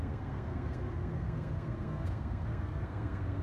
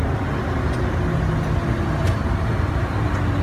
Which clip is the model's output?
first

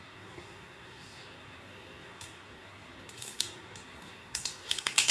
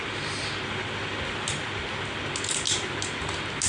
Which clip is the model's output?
first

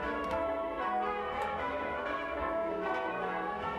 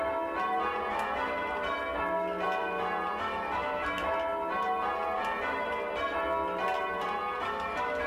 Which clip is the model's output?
first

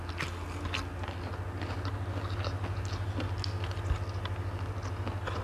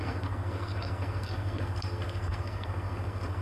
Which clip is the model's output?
second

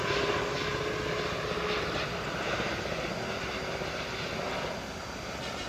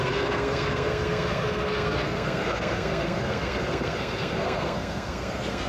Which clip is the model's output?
second